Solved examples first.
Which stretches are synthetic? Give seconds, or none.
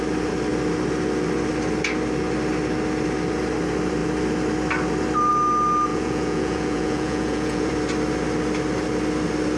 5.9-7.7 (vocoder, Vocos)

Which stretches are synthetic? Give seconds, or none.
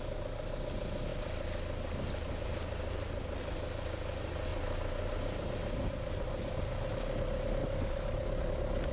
7.6-8.5 (vocoder, BigVGAN v2)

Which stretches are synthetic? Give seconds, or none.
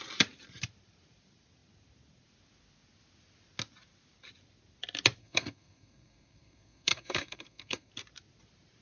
5.2-7.9 (codec, SNAC)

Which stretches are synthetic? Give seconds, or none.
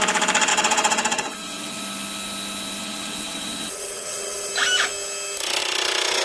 0.5-1.8 (vocoder, WaveNeXt); 2.8-4.5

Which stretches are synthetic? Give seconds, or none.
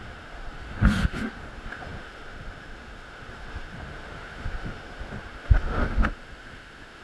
0.0-7.0 (autoencoder, DAC-VAE)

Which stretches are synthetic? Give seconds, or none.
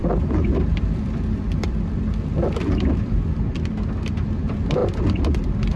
0.0-3.5 (vocoder, BigVGAN v2); 4.8-5.8